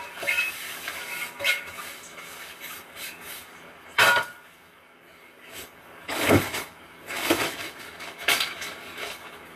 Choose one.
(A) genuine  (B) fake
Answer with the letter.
B